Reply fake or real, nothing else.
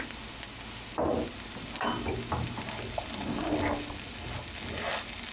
real